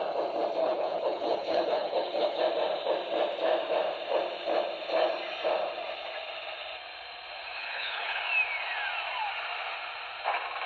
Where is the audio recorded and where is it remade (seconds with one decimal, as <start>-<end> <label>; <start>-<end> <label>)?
0.0-0.6 recorded; 0.6-2.4 remade; 2.4-7.6 recorded; 7.6-8.2 remade; 8.2-10.7 recorded